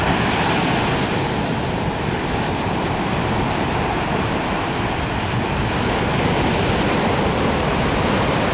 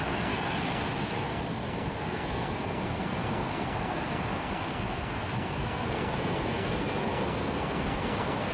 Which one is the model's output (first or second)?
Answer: second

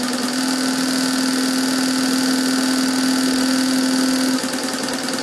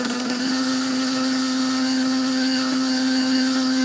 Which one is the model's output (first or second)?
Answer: second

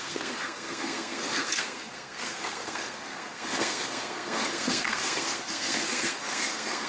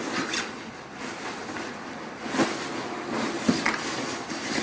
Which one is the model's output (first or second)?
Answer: first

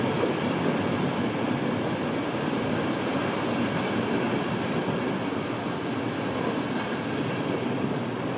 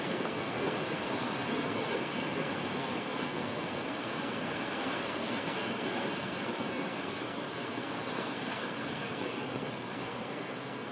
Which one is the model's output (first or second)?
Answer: second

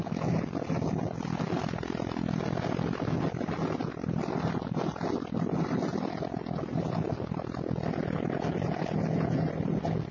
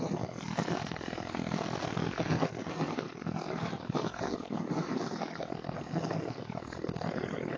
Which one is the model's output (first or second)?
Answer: second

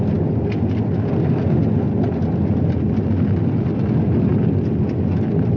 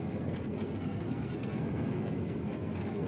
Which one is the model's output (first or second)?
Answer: second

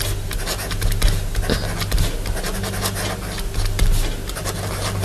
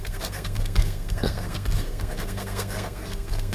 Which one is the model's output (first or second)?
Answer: second